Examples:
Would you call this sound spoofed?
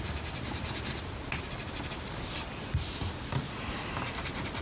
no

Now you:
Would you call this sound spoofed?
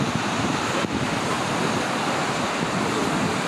no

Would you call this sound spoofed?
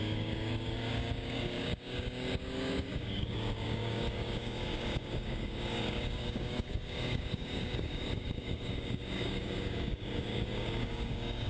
yes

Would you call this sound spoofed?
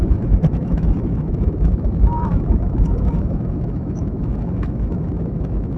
yes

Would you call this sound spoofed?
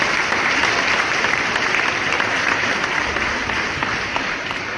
yes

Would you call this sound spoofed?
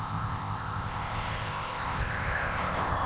yes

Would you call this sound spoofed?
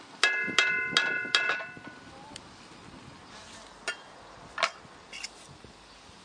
no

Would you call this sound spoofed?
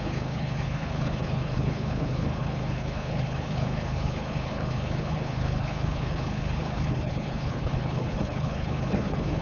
yes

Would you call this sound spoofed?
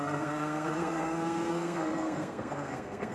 yes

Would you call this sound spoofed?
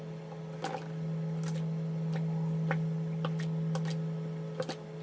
no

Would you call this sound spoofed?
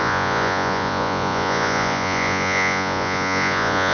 yes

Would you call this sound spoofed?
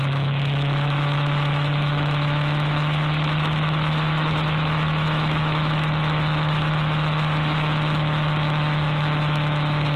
yes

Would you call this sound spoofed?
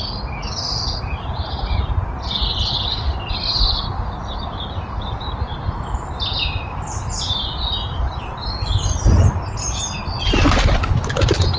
no